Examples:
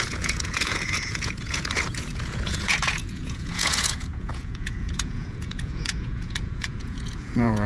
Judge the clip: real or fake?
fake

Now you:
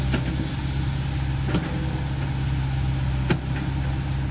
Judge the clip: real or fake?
real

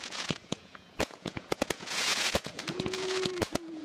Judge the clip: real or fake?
fake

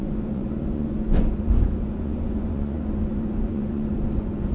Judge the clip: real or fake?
fake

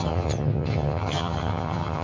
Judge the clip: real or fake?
fake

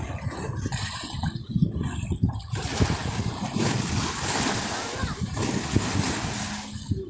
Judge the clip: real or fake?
real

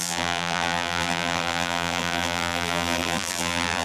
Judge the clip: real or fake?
fake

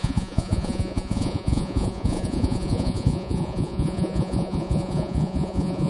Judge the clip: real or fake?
fake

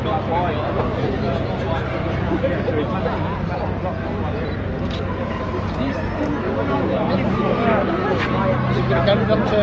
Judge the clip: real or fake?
real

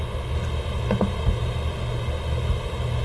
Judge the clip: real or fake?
real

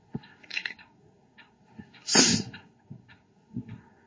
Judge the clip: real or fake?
fake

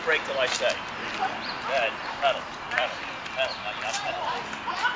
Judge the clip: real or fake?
real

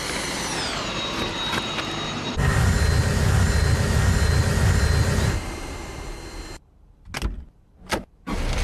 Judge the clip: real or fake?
real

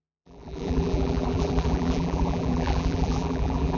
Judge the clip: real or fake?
fake